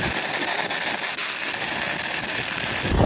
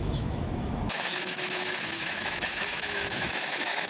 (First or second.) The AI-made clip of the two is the second